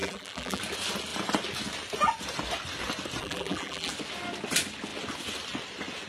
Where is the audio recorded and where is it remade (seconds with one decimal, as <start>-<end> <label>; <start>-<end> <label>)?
0.0-0.6 remade; 0.6-3.2 recorded; 3.2-3.9 remade; 3.9-6.1 recorded